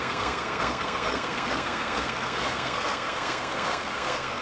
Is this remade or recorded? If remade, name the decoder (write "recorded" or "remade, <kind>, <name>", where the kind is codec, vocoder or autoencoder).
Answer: remade, codec, SNAC